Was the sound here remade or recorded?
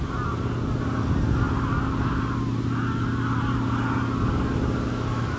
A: recorded